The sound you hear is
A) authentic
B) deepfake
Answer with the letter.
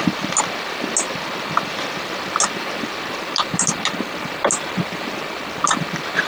A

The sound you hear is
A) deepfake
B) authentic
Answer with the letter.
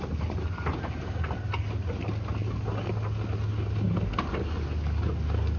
B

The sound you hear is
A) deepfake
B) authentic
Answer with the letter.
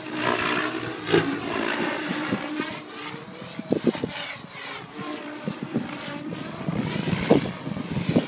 A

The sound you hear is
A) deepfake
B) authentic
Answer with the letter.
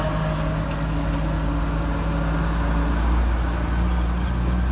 B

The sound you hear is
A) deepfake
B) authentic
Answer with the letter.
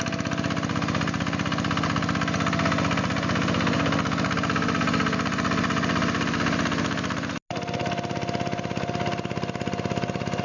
B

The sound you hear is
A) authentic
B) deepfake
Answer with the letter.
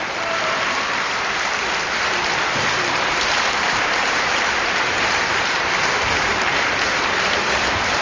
B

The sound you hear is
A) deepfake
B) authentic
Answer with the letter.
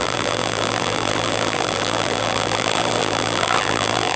A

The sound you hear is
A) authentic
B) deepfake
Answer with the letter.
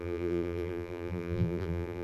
B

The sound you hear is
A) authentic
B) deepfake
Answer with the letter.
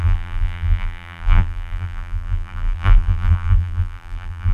B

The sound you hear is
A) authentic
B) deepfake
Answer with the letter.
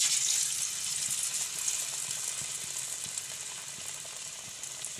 A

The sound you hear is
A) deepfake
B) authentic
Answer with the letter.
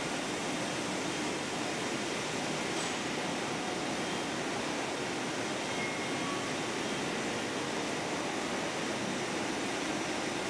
B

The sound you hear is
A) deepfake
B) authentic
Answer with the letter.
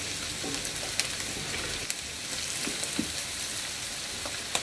B